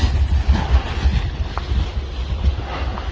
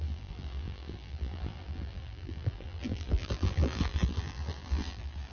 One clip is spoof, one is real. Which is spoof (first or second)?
second